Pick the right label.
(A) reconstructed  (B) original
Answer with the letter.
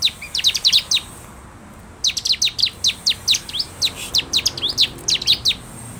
B